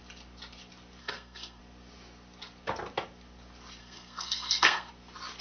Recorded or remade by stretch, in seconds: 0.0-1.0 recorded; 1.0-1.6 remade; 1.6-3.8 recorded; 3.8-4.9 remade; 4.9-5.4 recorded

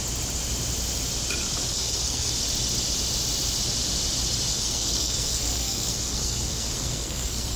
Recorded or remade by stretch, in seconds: 0.0-1.7 recorded; 1.7-2.3 remade; 2.3-4.5 recorded; 4.5-7.6 remade

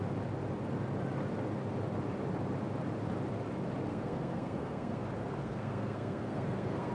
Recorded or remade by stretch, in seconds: 0.0-3.9 recorded; 3.9-5.0 remade; 5.0-5.4 recorded; 5.4-6.9 remade

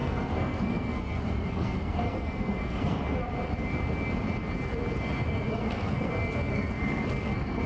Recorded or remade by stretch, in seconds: 0.0-3.0 remade; 3.0-5.5 recorded; 5.5-6.1 remade; 6.1-6.5 recorded; 6.5-7.7 remade

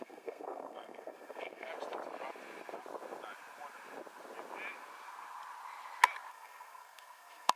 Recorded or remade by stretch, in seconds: 0.0-1.7 remade; 1.7-6.3 recorded; 6.3-7.6 remade

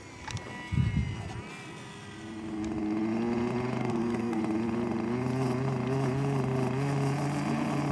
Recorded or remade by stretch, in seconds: 0.0-3.8 recorded; 3.8-4.4 remade; 4.4-7.9 recorded

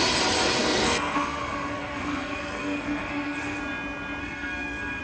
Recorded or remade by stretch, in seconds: 0.0-0.6 recorded; 0.6-3.6 remade; 3.6-4.2 recorded; 4.2-5.0 remade